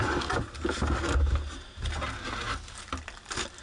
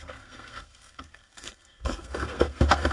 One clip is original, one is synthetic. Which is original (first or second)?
first